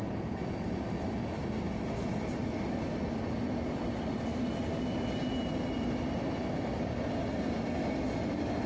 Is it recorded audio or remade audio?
recorded